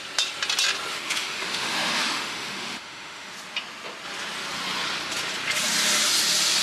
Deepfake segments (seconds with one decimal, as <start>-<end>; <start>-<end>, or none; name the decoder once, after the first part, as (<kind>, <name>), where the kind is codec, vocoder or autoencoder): 0.9-3.3 (autoencoder, DAC-VAE)